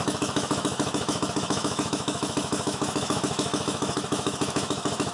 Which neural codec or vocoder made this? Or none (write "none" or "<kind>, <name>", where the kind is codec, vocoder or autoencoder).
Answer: autoencoder, DAC-VAE